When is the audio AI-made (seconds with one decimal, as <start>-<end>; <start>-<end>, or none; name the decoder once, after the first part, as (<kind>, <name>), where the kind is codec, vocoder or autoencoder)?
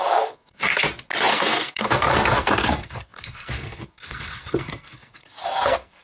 0.0-0.7 (codec, SNAC); 1.3-6.0